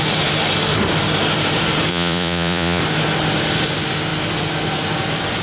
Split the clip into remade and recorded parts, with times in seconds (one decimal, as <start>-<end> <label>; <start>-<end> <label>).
0.0-1.9 recorded; 1.9-2.8 remade; 2.8-5.4 recorded